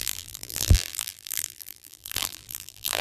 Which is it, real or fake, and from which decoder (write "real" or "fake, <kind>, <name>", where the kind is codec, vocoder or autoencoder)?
fake, vocoder, BigVGAN v2